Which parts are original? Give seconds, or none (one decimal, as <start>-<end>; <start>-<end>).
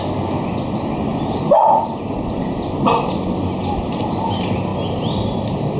0.0-5.8